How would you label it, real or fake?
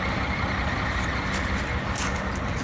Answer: real